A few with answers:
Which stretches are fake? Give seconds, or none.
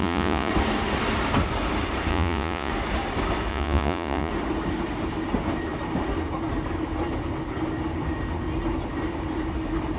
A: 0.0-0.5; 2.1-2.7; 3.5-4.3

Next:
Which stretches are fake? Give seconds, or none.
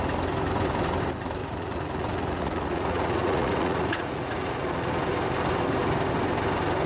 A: 1.4-4.9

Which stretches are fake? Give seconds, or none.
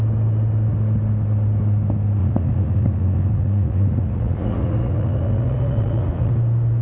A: 2.2-6.3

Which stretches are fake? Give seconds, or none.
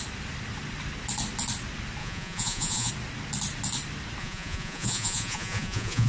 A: 2.0-2.9; 4.2-6.1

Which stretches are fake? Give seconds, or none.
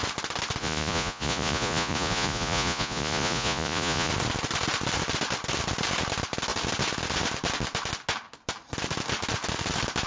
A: 0.6-4.1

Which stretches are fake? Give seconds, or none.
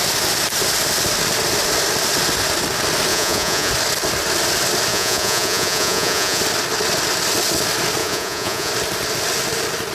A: 3.1-3.7; 4.9-6.4; 8.0-8.7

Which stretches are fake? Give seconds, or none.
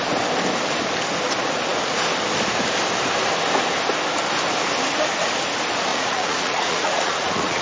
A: 5.9-7.6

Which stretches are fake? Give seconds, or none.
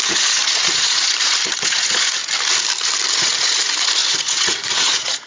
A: 0.0-2.2; 3.1-5.3